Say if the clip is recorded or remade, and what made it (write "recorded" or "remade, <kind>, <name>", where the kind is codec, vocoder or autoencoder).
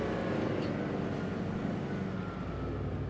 recorded